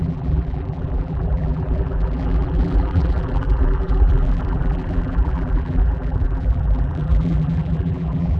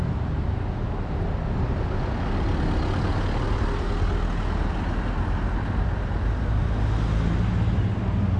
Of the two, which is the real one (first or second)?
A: second